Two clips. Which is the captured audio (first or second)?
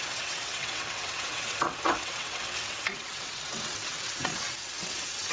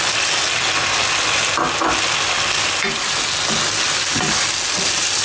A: second